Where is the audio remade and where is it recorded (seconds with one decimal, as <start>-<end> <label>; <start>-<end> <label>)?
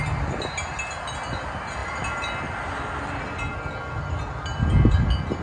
0.0-5.4 recorded